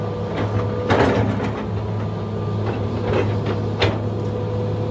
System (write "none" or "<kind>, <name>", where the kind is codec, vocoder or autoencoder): none